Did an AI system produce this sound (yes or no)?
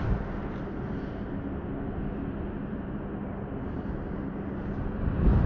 no